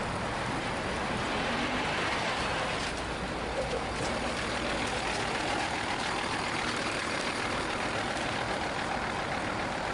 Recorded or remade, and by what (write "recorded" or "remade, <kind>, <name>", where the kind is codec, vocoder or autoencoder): recorded